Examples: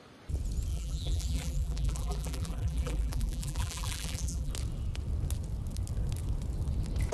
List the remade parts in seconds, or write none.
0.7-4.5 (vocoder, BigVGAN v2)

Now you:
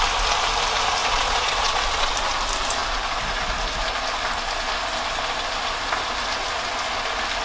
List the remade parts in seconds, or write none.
1.0-2.1 (vocoder, Vocos)

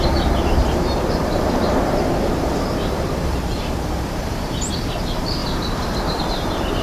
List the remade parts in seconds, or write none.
0.6-4.7 (vocoder, BigVGAN v2); 5.4-6.2

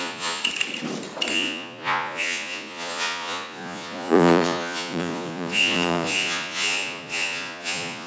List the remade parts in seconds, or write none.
0.0-0.4 (vocoder, Vocos); 1.3-8.1

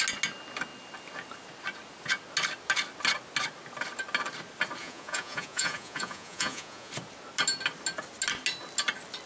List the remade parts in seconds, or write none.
4.8-6.9 (vocoder, Vocos)